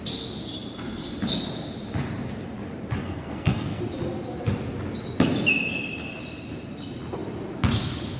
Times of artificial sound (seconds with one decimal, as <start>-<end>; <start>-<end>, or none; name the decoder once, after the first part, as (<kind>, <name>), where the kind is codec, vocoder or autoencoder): 3.0-3.8 (codec, SNAC)